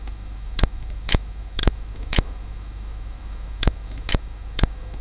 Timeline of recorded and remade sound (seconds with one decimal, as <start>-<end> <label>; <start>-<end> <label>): 0.0-5.0 remade